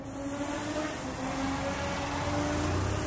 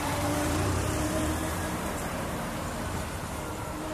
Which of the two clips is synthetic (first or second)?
second